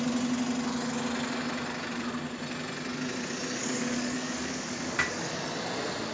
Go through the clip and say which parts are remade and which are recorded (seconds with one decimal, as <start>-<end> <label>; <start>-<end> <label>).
0.0-3.6 recorded; 3.6-5.4 remade; 5.4-6.1 recorded